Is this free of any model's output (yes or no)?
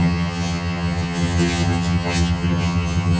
no